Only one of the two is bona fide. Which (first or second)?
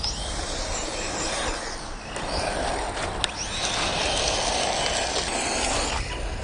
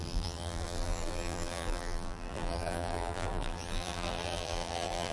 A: first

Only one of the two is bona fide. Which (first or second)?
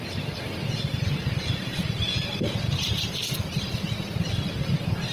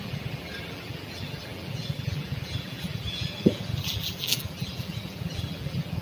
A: first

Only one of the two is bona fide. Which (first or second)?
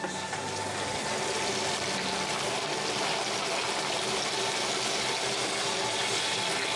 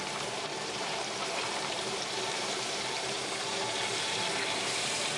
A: first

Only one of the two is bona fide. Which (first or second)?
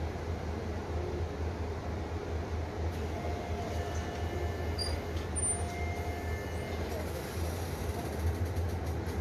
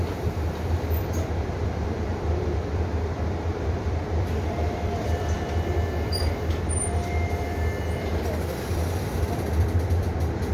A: first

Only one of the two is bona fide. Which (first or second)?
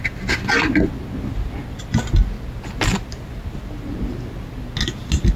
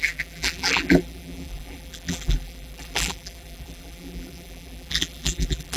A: first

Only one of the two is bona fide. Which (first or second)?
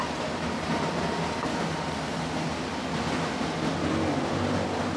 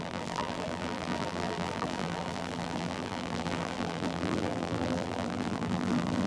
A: first